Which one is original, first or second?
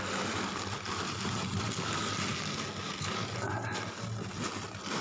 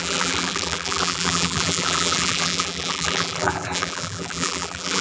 first